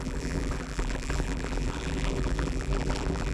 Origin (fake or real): fake